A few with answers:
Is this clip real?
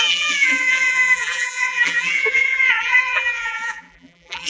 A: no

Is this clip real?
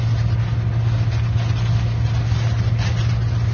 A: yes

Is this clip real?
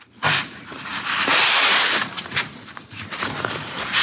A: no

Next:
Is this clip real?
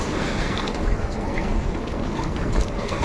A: no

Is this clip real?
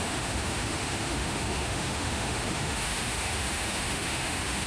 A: no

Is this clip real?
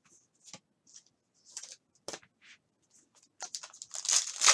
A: yes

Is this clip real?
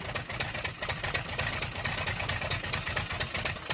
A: yes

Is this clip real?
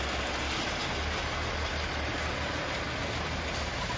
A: yes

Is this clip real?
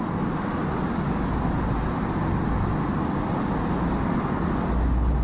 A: yes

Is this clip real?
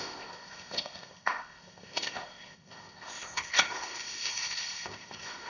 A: no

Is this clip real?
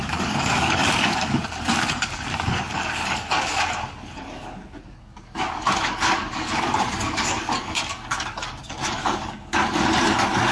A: no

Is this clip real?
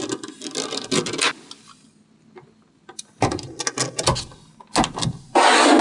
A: yes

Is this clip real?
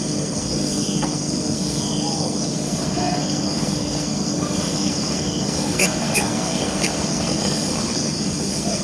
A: no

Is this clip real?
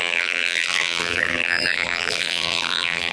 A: no